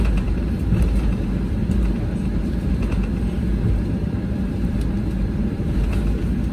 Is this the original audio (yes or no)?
yes